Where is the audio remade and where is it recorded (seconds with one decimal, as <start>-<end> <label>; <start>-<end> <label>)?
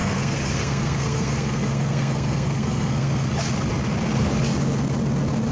0.0-3.3 remade; 3.3-5.5 recorded